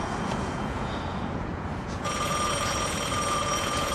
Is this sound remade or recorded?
remade